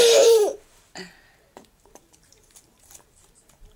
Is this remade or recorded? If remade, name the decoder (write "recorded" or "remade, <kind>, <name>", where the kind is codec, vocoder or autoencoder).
remade, vocoder, BigVGAN v2